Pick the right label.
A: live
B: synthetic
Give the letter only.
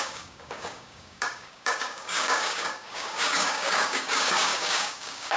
B